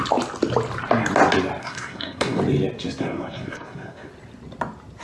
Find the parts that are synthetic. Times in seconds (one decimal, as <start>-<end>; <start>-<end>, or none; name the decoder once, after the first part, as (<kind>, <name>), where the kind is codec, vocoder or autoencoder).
1.6-2.4 (codec, SNAC); 3.0-4.1